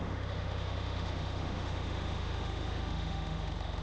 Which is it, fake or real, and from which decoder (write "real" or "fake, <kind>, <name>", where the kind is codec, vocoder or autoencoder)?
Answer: fake, autoencoder, DAC-VAE